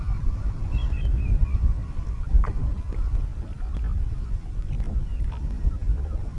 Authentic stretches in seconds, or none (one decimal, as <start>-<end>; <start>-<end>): 4.1-4.6